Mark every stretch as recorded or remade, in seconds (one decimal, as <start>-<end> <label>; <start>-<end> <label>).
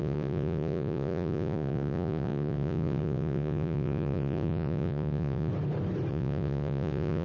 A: 0.0-5.5 remade; 5.5-6.1 recorded; 6.1-7.2 remade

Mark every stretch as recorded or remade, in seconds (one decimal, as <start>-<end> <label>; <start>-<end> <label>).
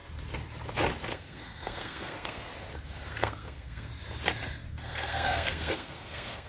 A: 0.0-1.1 recorded; 1.1-2.5 remade; 2.5-3.1 recorded; 3.1-3.9 remade; 3.9-4.7 recorded; 4.7-6.5 remade